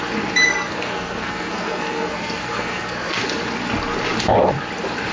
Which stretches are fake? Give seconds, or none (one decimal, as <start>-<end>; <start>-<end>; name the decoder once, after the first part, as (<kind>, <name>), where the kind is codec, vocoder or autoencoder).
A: 0.5-3.2 (codec, SNAC)

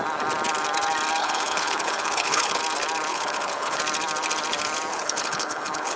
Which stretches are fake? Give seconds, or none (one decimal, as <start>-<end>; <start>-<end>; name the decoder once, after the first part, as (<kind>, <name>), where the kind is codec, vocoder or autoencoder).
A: 1.2-2.6 (codec, HILCodec); 3.1-3.8; 4.9-6.0

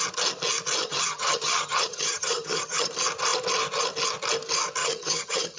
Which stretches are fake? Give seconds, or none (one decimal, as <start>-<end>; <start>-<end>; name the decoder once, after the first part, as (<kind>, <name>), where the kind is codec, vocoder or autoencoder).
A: 0.8-2.9 (vocoder, HiFi-GAN); 4.8-5.6